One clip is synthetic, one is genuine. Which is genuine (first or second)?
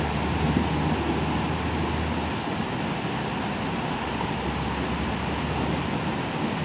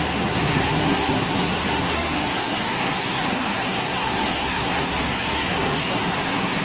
first